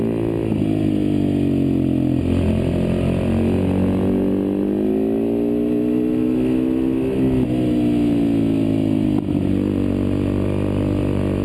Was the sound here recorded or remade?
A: recorded